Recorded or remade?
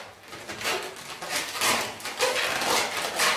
recorded